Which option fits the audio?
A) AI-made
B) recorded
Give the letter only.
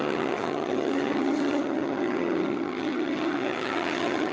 A